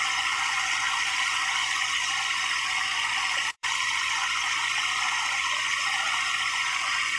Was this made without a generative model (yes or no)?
no